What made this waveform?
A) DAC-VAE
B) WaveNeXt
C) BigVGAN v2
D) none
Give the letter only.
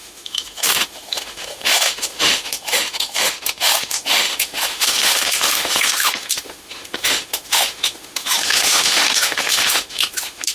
A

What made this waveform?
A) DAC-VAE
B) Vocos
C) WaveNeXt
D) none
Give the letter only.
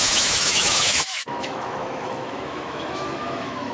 A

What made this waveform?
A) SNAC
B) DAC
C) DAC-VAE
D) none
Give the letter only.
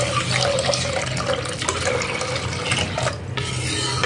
D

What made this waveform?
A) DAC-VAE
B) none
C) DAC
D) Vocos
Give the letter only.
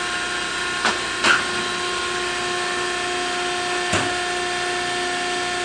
B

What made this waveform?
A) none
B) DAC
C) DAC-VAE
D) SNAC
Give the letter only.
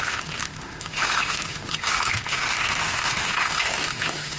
C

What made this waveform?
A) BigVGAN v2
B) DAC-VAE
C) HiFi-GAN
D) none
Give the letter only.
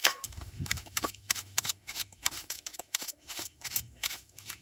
B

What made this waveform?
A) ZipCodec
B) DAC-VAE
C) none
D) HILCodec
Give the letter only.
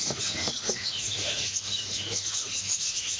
B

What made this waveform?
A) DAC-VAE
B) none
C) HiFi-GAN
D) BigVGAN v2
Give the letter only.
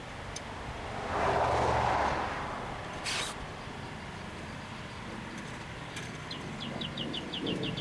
B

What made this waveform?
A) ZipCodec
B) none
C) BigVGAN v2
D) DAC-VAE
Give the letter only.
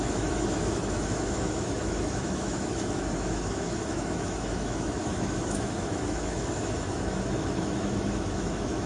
D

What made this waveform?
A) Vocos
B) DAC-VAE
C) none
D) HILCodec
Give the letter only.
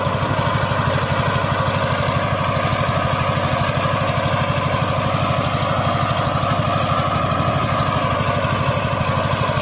C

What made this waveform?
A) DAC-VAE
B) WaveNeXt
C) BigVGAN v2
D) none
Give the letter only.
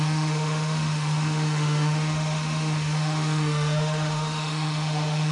A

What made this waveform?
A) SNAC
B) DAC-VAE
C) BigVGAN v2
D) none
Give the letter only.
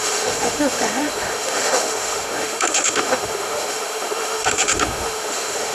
B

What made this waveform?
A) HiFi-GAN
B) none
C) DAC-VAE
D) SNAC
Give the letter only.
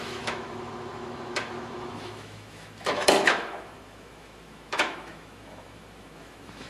C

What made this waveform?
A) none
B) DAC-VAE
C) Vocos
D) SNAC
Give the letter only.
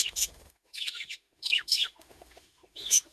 B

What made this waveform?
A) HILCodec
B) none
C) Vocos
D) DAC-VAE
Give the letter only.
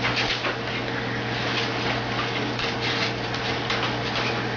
B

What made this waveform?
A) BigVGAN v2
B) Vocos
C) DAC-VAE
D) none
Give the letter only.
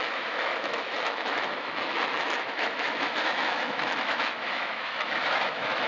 C